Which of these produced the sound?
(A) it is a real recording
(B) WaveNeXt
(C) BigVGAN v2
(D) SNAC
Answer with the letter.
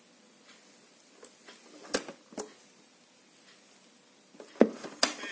A